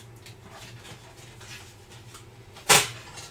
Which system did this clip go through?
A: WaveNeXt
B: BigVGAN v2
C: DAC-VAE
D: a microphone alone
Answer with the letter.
D